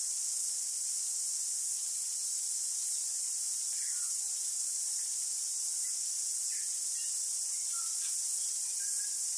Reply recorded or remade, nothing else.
recorded